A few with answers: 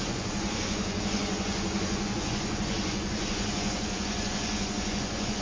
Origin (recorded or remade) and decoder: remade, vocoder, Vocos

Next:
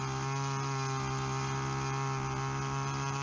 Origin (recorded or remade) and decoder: recorded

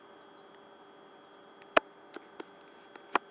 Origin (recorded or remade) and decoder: recorded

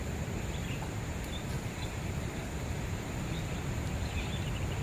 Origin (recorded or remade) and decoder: remade, vocoder, BigVGAN v2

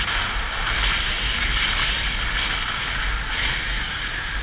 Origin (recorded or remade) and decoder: recorded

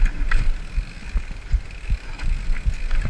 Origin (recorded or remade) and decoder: recorded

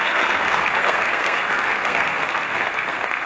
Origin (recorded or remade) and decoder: remade, codec, SNAC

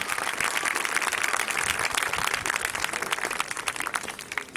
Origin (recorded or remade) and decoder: recorded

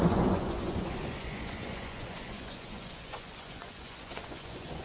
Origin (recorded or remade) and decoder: remade, vocoder, Vocos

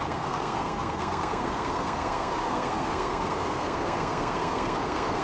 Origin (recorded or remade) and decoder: remade, codec, SNAC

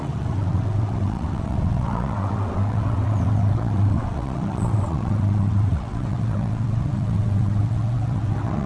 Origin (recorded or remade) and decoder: remade, vocoder, WaveNeXt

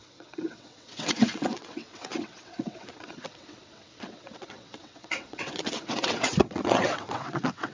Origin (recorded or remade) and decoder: remade, vocoder, WaveNeXt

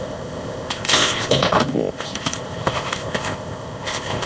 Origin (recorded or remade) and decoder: remade, codec, ZipCodec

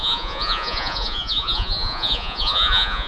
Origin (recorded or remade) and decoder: remade, vocoder, Vocos